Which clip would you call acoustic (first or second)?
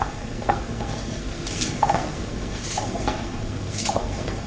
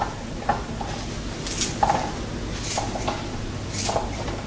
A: second